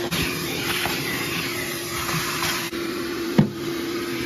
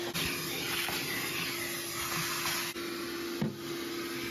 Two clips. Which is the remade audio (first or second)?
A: first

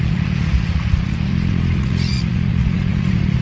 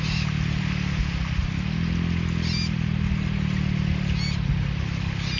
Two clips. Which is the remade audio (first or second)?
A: first